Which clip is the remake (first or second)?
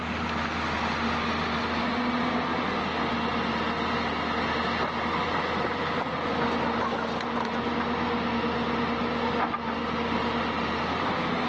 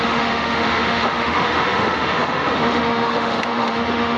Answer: second